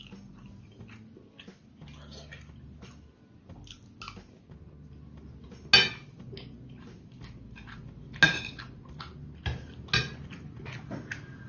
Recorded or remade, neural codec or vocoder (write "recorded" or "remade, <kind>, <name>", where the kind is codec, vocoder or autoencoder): recorded